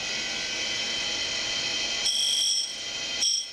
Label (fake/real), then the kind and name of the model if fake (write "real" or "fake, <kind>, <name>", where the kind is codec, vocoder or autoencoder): real